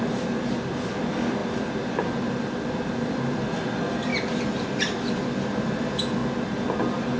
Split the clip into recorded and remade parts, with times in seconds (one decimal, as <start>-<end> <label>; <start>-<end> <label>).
0.0-6.2 remade; 6.2-7.2 recorded